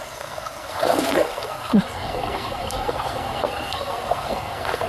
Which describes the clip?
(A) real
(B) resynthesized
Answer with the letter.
B